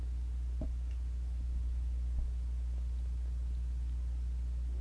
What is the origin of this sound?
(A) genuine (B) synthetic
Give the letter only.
A